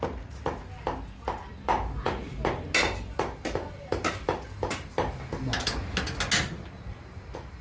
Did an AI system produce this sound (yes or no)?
no